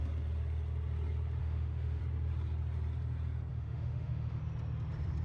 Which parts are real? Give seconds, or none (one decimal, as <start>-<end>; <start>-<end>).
0.0-1.4; 2.0-3.5; 4.4-5.2